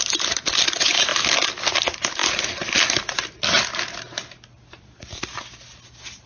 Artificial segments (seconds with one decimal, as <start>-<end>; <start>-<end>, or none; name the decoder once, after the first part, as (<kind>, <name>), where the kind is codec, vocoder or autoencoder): none